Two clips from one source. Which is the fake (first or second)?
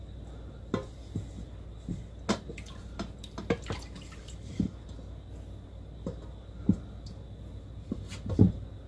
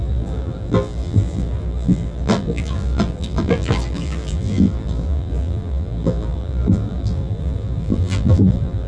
second